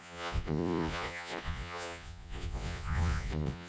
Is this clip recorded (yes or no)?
no